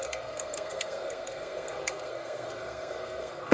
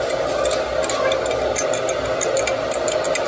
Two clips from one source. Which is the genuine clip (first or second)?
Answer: second